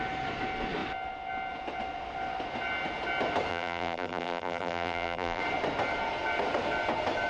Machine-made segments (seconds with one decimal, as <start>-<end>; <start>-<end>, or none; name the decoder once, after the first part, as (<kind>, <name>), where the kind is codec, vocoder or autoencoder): 3.5-5.4 (vocoder, BigVGAN v2)